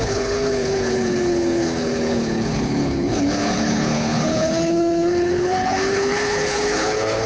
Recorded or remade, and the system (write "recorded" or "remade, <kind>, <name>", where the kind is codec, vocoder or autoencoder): remade, codec, HILCodec